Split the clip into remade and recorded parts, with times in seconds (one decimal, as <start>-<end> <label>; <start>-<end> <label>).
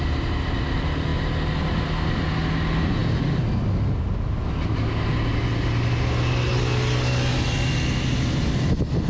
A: 0.0-9.1 recorded